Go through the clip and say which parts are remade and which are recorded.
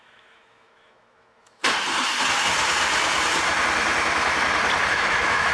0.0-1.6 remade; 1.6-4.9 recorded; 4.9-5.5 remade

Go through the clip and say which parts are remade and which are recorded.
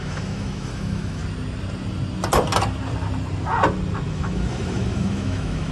0.0-1.2 remade; 1.2-4.1 recorded; 4.1-5.7 remade